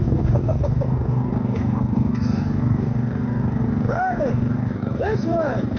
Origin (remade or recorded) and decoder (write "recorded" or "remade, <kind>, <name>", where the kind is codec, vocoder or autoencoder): remade, codec, DAC